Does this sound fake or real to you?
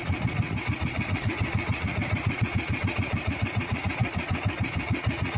fake